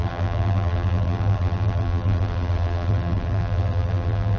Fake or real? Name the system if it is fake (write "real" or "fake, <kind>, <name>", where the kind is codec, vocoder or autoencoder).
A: fake, vocoder, BigVGAN v2